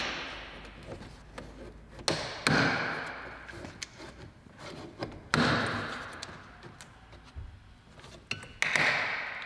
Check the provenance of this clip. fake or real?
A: real